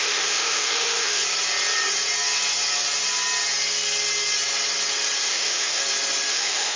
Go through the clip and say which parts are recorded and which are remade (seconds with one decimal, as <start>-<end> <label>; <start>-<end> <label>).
0.0-1.2 remade; 1.2-5.3 recorded; 5.3-5.8 remade; 5.8-6.3 recorded; 6.3-6.8 remade